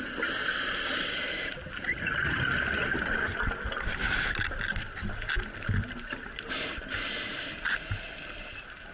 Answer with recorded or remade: recorded